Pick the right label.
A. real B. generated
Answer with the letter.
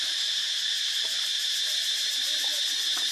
B